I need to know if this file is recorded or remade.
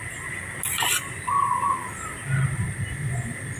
recorded